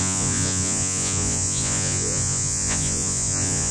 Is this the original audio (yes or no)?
no